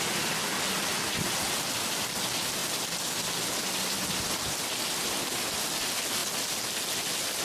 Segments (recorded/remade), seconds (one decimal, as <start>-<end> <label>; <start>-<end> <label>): 0.0-7.4 recorded